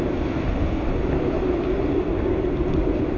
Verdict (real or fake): real